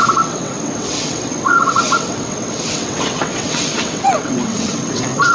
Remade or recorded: remade